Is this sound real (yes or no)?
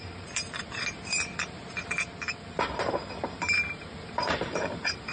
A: no